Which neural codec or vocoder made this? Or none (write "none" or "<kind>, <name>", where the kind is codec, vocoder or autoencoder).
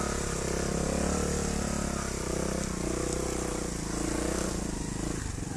none